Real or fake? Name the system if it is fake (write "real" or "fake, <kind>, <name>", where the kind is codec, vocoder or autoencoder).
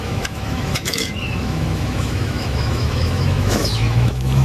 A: fake, autoencoder, DAC-VAE